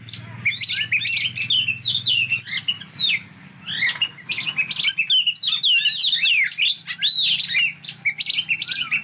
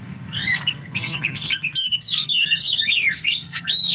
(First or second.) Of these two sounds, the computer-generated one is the second